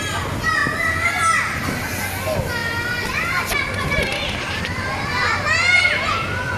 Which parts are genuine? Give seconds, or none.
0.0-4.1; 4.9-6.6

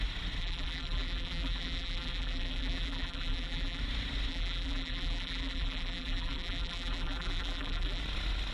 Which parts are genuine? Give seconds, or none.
0.0-0.4; 3.8-4.3; 8.0-8.5